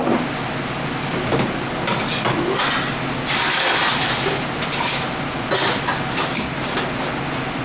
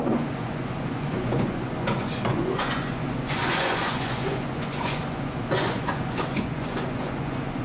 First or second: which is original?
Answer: first